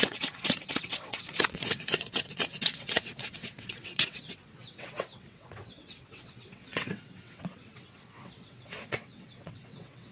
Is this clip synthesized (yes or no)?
yes